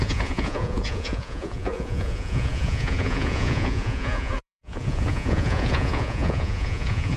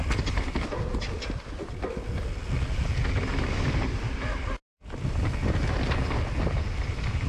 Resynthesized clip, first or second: first